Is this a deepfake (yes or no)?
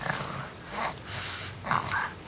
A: no